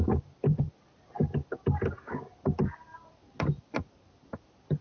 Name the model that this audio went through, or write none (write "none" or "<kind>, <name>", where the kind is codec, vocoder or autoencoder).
none